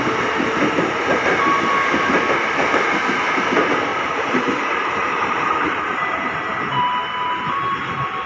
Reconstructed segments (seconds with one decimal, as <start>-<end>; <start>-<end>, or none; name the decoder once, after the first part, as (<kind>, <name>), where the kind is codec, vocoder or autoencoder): 3.9-6.4 (vocoder, BigVGAN v2)